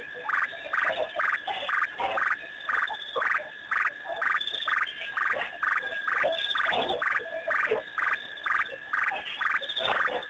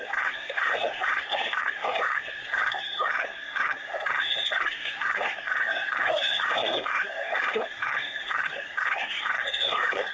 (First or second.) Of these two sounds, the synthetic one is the second